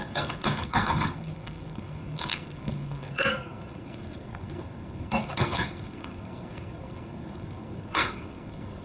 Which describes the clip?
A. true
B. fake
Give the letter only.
B